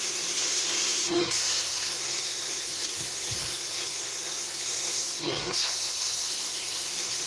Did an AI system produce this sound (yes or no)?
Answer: yes